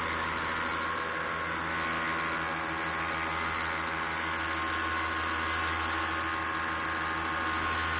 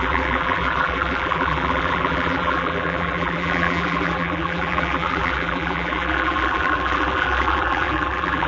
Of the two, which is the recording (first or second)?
first